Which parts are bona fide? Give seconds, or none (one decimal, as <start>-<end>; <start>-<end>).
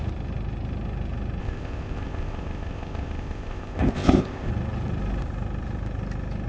0.0-1.4; 4.5-6.5